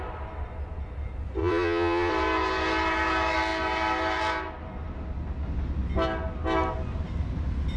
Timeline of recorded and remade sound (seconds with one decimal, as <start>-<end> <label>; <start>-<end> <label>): 0.0-1.4 recorded; 1.4-2.1 remade; 2.1-7.8 recorded